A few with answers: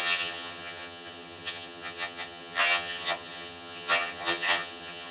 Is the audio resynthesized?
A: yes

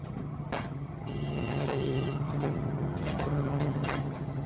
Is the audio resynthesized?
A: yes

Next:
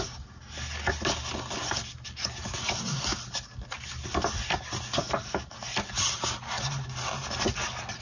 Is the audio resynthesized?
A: no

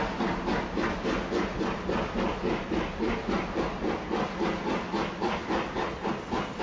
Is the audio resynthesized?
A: no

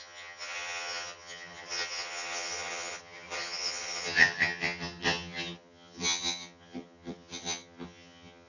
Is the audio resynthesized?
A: yes